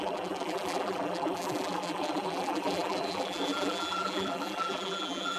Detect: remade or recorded remade